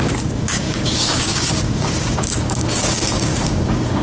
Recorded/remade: remade